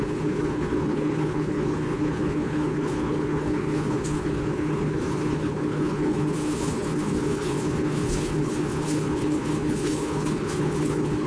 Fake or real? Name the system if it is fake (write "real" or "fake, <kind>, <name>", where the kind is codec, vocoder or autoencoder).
fake, codec, HILCodec